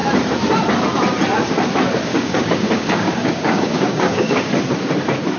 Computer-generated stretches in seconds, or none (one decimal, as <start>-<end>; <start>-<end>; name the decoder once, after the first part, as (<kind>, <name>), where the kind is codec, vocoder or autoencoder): 2.1-4.5 (codec, DAC)